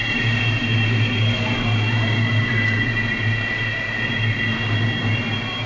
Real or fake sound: real